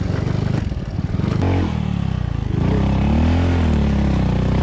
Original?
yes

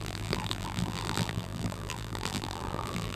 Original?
no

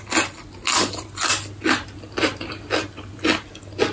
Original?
yes